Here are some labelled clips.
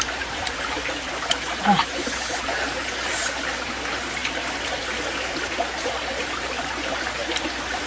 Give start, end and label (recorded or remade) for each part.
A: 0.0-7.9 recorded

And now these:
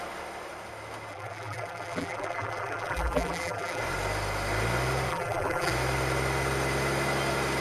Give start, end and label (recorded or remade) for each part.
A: 0.0-1.1 recorded; 1.1-3.8 remade; 3.8-5.1 recorded; 5.1-5.7 remade; 5.7-7.6 recorded

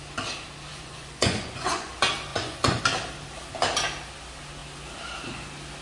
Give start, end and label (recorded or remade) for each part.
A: 0.0-0.7 recorded; 0.7-1.9 remade; 1.9-2.3 recorded; 2.3-2.8 remade; 2.8-5.8 recorded